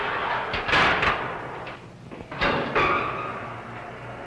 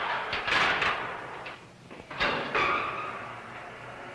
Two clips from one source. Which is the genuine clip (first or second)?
first